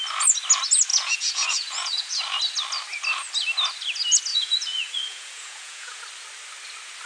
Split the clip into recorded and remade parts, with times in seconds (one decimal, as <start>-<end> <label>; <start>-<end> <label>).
0.0-0.9 recorded; 0.9-2.2 remade; 2.2-4.3 recorded; 4.3-6.0 remade; 6.0-7.1 recorded